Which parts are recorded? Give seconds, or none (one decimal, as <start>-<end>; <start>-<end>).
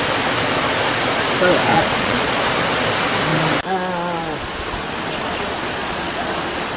0.0-1.7; 2.5-5.8; 6.3-6.8